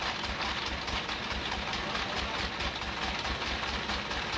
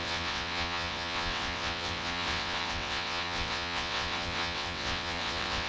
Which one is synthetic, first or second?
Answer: second